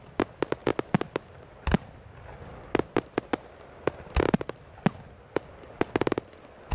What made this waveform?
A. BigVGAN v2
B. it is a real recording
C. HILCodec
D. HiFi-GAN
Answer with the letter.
B